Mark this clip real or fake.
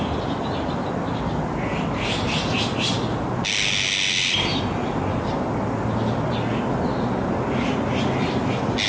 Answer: real